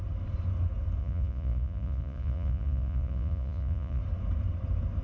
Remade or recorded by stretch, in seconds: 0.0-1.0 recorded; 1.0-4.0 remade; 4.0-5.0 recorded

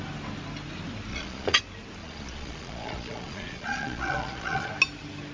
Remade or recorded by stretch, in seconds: 0.0-1.1 recorded; 1.1-1.6 remade; 1.6-2.0 recorded; 2.0-4.7 remade; 4.7-5.3 recorded